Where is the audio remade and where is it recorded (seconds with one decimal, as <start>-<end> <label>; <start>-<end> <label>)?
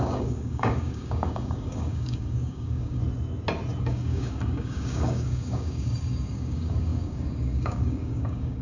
0.0-3.0 remade; 3.0-3.8 recorded; 3.8-8.6 remade